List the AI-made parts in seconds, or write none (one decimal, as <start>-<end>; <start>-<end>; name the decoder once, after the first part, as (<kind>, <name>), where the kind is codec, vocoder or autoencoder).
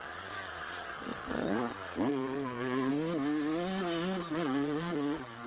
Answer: 0.0-2.9 (vocoder, Vocos); 4.3-5.5